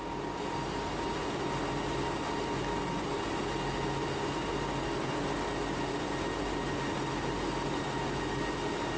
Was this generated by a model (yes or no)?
no